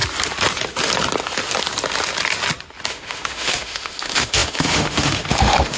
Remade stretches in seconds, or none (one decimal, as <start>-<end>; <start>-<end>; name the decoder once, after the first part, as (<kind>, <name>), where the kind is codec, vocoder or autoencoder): 2.9-5.8 (autoencoder, DAC-VAE)